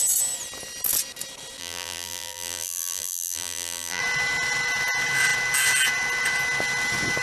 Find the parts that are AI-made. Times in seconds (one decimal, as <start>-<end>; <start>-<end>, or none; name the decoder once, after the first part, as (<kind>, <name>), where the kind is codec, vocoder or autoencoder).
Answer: 1.6-4.0 (vocoder, BigVGAN v2)